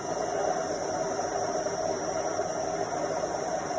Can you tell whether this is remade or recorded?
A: remade